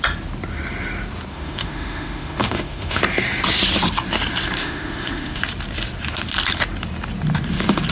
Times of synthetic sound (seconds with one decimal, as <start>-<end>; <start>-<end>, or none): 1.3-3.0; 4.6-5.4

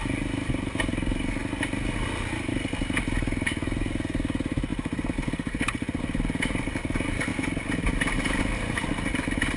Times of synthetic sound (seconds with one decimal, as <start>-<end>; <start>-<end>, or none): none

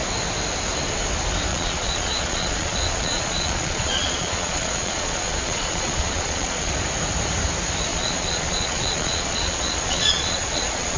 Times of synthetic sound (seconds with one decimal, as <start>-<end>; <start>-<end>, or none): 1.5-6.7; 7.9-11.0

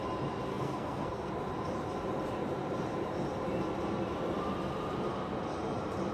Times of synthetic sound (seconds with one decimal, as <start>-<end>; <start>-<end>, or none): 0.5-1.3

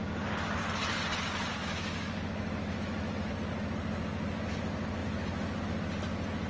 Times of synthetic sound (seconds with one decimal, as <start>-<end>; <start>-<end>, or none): 1.5-3.3; 5.0-5.6

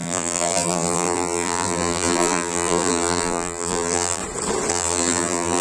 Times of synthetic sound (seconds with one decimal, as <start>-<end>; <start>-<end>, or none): 0.0-4.2; 4.7-5.6